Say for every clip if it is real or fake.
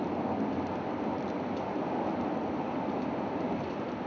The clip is real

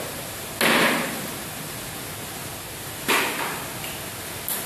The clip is real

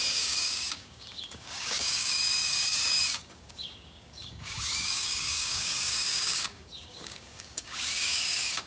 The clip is fake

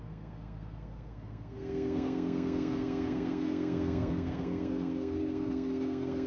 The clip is fake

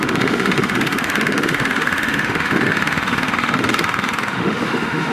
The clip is fake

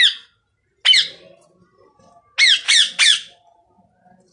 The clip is real